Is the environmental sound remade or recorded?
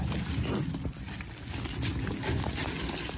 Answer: recorded